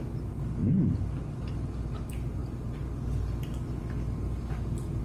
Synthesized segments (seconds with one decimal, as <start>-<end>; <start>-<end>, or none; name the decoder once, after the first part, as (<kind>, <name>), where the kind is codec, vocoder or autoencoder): none